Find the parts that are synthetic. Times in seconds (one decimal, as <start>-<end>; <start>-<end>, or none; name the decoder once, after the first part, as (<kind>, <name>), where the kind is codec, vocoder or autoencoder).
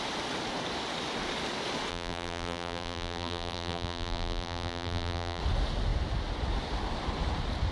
1.9-5.4 (vocoder, BigVGAN v2)